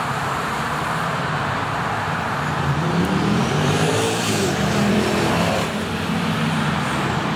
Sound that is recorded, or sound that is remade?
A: remade